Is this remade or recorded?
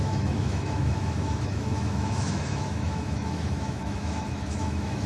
remade